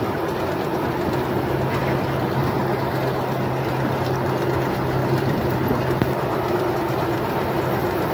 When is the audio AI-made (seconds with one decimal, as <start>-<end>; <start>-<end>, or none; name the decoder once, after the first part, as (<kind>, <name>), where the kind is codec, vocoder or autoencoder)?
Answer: 1.8-2.6 (vocoder, BigVGAN v2); 5.0-6.7